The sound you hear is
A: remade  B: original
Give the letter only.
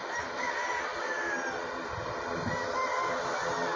B